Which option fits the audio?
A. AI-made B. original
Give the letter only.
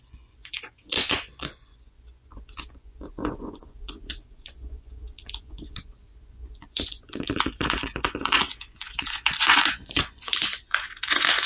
A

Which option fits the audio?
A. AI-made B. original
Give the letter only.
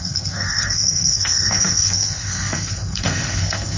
A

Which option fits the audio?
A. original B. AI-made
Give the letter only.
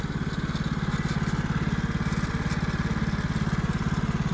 A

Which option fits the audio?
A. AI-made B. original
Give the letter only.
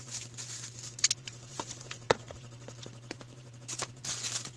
A